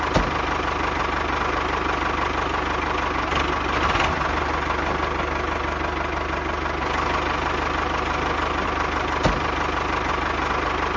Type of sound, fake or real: real